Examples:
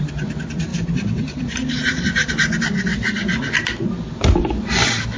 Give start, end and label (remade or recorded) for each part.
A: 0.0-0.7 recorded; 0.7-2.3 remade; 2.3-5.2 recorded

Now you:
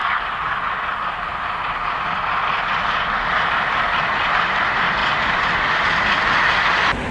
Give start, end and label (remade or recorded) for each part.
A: 0.0-7.1 recorded

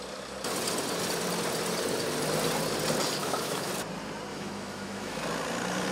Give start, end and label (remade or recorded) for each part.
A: 0.0-3.2 recorded; 3.2-3.7 remade; 3.7-4.3 recorded; 4.3-5.2 remade; 5.2-5.9 recorded

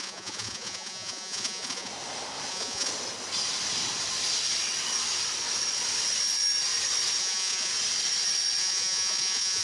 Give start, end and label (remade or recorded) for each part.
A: 0.0-1.9 remade; 1.9-2.5 recorded; 2.5-2.9 remade; 2.9-7.2 recorded; 7.2-7.7 remade; 7.7-8.6 recorded; 8.6-9.6 remade